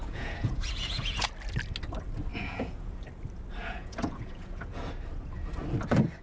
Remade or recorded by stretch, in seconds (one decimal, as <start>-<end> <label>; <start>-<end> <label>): 0.0-1.3 remade; 1.3-2.3 recorded; 2.3-3.0 remade; 3.0-3.6 recorded; 3.6-4.8 remade; 4.8-6.2 recorded